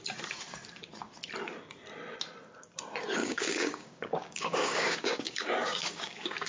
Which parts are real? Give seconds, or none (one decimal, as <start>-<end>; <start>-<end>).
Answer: 0.0-3.2